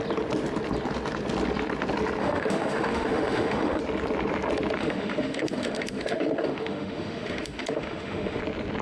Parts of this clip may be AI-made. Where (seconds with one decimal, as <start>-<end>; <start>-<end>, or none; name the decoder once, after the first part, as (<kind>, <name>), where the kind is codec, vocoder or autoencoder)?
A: 2.2-3.8 (autoencoder, DAC-VAE); 4.8-8.4